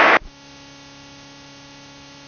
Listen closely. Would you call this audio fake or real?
real